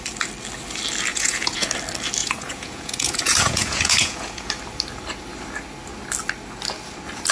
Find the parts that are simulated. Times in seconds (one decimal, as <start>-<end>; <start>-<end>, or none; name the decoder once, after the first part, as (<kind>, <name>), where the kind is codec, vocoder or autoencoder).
1.1-1.7 (vocoder, Vocos); 2.2-4.5